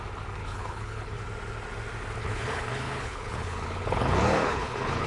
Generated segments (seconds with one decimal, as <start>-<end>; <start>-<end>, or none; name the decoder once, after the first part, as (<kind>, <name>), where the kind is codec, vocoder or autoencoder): 0.4-1.2 (codec, HILCodec); 2.2-5.1